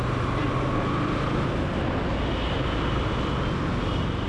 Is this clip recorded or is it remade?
recorded